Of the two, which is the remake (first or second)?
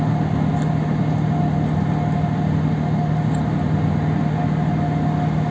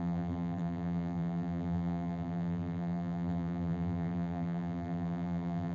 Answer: second